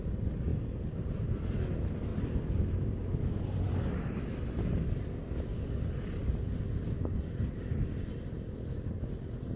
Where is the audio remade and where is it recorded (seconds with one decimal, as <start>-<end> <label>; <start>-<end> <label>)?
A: 0.0-0.5 recorded; 0.5-1.6 remade; 1.6-9.6 recorded